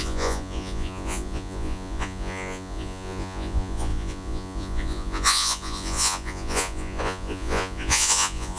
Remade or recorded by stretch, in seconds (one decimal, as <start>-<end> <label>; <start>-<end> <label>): 0.0-8.6 remade